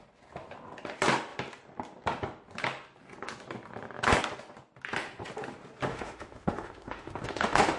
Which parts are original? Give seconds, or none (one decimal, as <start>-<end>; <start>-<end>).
0.0-5.9

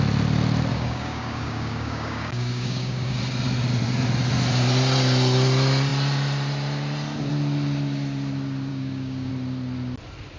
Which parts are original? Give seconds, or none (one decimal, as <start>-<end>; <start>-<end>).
0.0-0.7; 3.2-8.7; 9.3-10.4

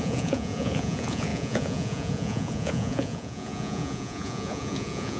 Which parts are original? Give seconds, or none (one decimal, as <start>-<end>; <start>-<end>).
none

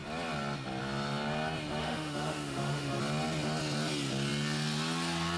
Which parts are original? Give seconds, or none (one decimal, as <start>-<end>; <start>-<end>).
0.0-1.8; 3.0-5.4

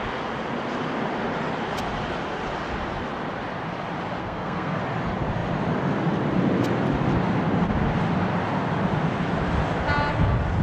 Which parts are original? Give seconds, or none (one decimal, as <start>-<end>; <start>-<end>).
0.0-4.2; 4.8-10.6

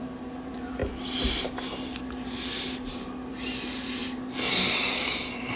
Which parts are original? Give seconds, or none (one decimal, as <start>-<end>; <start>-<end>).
0.8-3.3; 4.0-4.6

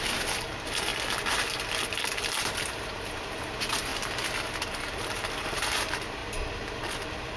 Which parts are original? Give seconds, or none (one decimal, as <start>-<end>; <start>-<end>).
0.9-2.6; 3.9-4.5

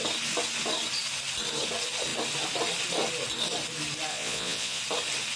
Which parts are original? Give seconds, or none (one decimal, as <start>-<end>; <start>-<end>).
0.0-4.1; 4.8-5.4